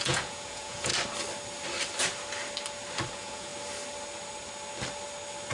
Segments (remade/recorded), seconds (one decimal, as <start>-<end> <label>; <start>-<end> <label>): 0.0-0.9 remade; 0.9-3.1 recorded; 3.1-3.5 remade; 3.5-5.5 recorded